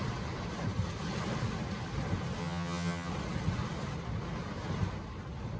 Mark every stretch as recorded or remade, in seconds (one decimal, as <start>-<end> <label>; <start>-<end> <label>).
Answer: 0.0-2.4 recorded; 2.4-3.1 remade; 3.1-5.6 recorded